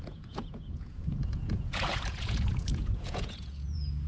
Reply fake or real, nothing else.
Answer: fake